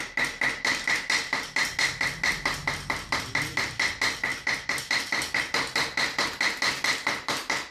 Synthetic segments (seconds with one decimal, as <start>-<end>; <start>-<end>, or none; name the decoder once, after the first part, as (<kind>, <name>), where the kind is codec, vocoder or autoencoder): 4.3-5.4 (vocoder, BigVGAN v2)